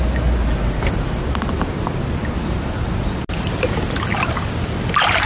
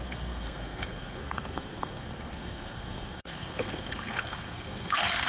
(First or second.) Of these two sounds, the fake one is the second